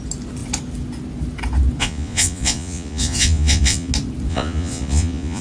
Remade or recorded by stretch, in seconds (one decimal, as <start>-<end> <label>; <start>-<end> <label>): 0.0-1.8 recorded; 1.8-3.9 remade; 3.9-4.3 recorded; 4.3-5.4 remade